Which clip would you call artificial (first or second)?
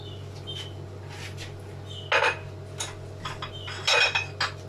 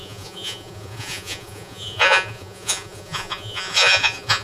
second